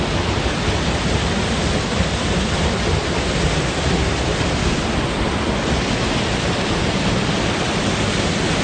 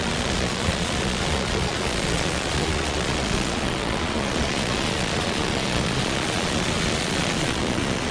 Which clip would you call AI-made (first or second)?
second